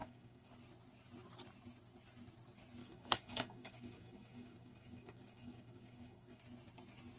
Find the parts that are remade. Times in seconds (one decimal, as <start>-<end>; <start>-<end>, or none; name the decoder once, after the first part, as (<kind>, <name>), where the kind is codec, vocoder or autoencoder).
0.0-0.5 (codec, DAC); 2.8-6.4